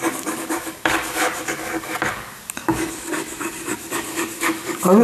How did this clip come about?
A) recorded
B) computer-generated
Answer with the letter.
B